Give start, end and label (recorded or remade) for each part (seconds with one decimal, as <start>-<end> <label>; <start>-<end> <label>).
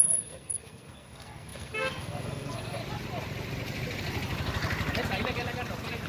0.0-2.8 remade; 2.8-6.1 recorded